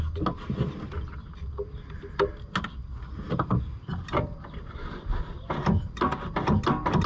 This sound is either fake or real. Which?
real